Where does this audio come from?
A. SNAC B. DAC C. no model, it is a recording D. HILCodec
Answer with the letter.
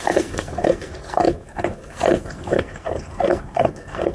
A